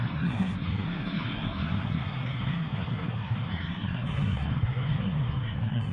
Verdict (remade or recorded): remade